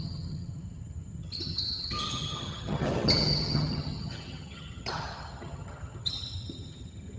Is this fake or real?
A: fake